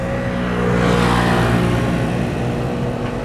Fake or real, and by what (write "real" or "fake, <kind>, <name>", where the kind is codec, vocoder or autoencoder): real